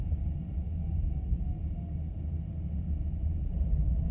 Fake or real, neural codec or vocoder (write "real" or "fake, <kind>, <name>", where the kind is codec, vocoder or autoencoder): real